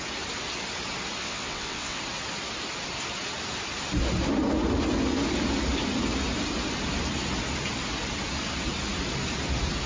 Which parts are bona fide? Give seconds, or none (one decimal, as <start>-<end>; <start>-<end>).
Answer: 0.0-1.2; 2.0-9.9